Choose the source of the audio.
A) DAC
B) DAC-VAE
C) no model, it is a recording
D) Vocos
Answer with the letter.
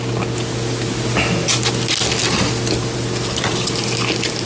C